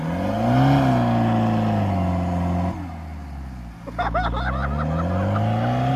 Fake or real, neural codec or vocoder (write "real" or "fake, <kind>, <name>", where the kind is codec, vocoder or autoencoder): real